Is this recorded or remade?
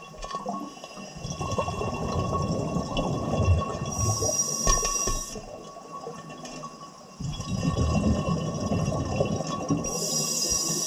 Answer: recorded